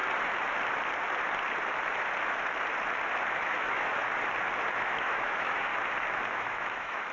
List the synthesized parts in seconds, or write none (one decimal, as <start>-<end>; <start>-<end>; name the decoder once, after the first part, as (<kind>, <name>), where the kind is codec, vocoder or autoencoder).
3.3-4.0 (autoencoder, DAC-VAE); 4.7-5.7; 6.4-7.1

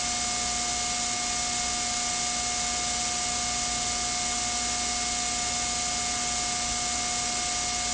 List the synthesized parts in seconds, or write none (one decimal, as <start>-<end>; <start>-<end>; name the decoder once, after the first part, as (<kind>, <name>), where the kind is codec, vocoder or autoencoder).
none

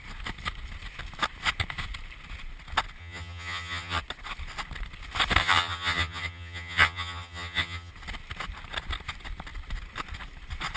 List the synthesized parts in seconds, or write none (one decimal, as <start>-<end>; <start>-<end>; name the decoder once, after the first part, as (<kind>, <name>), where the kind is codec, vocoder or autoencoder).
3.0-4.0 (vocoder, HiFi-GAN); 5.4-7.9

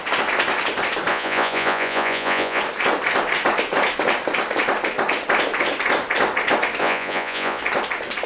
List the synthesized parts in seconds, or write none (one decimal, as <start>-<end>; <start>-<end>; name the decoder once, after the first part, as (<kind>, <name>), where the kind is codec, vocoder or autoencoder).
1.1-2.6 (vocoder, Vocos); 6.8-7.6

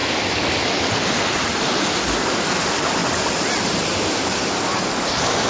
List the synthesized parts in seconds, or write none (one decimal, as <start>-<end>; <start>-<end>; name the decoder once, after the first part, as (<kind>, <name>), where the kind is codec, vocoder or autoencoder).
none

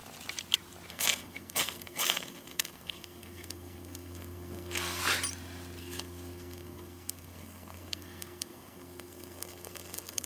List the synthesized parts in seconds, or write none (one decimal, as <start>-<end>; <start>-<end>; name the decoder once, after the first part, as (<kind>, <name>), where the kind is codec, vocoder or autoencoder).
0.9-5.0 (codec, SNAC); 5.8-10.3